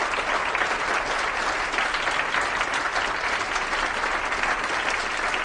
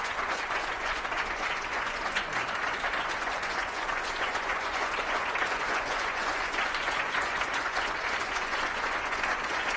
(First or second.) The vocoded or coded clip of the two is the second